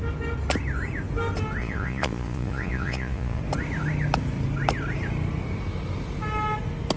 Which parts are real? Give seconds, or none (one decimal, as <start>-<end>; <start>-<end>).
0.0-1.6; 3.4-7.0